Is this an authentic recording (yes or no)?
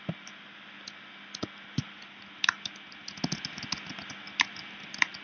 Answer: yes